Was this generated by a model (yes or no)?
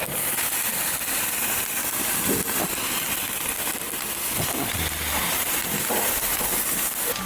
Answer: no